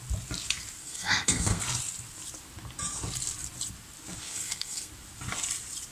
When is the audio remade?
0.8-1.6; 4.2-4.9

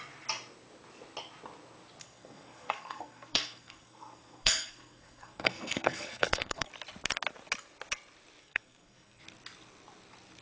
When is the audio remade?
2.0-6.7; 8.4-9.2

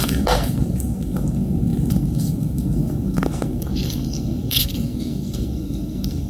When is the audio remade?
0.0-6.3

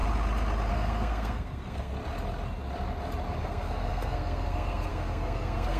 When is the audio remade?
0.7-1.9; 3.4-5.8